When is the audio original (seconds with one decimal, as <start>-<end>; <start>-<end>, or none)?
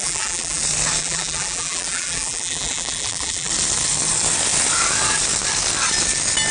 0.6-1.0; 3.5-6.5